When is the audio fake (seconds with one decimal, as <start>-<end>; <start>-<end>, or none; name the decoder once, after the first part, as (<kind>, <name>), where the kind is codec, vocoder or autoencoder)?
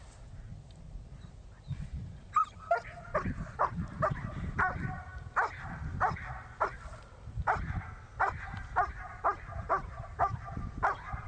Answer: 0.0-2.4 (vocoder, BigVGAN v2); 3.4-5.1; 8.3-11.3